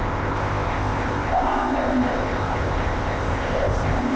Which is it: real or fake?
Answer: fake